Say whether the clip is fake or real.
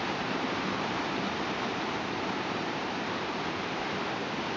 fake